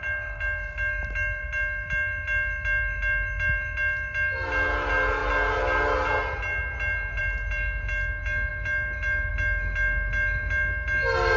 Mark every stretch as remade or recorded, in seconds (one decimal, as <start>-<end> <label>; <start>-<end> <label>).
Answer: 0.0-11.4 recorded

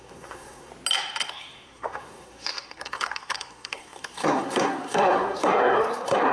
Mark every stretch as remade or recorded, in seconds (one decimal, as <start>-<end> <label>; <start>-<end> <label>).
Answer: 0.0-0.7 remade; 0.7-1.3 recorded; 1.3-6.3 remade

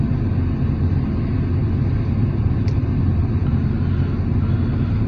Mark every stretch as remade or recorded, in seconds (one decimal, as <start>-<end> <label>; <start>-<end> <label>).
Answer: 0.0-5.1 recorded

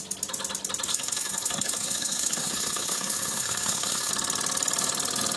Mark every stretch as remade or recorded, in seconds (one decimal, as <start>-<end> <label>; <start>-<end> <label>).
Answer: 0.0-0.9 recorded; 0.9-4.1 remade; 4.1-5.4 recorded

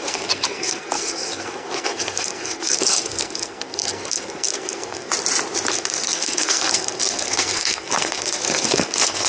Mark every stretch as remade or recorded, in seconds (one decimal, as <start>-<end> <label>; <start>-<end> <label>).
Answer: 0.0-5.1 remade; 5.1-5.7 recorded; 5.7-9.3 remade

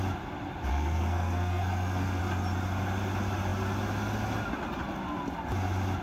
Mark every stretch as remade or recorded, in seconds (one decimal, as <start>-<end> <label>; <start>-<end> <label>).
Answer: 0.0-0.7 recorded; 0.7-2.2 remade; 2.2-6.0 recorded